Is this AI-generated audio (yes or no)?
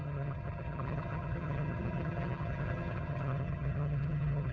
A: yes